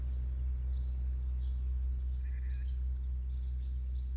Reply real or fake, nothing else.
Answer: real